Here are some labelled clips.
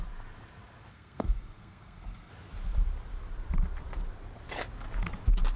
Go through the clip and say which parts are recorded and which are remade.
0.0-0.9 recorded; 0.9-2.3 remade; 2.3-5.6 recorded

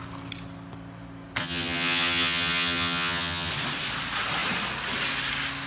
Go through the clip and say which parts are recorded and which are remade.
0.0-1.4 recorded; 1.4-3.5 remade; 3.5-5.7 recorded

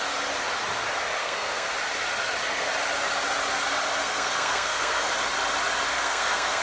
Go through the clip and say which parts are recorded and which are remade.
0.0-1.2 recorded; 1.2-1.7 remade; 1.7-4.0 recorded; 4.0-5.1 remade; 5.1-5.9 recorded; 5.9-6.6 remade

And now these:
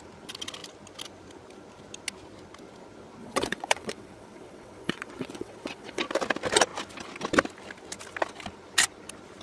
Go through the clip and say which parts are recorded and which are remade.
0.0-3.2 recorded; 3.2-6.0 remade; 6.0-9.4 recorded